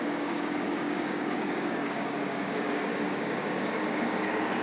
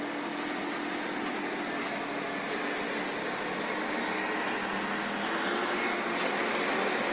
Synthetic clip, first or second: first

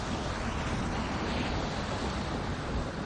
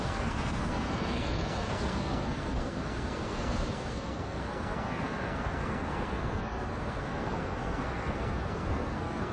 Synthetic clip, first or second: second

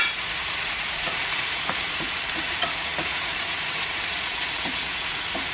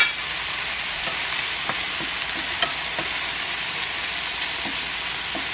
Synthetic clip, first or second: first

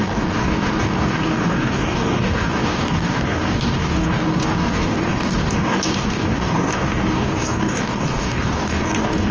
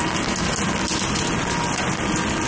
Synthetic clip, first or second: first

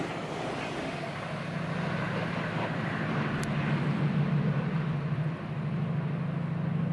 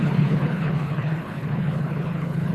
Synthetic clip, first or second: second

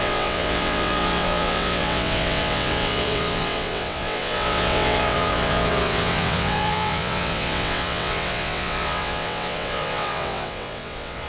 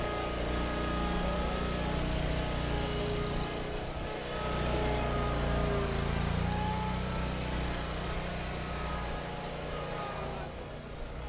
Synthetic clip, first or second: first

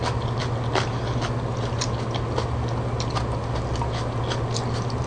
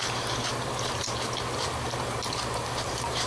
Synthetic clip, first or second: second